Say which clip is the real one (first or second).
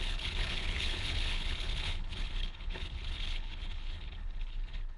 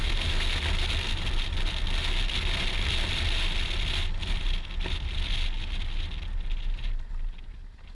second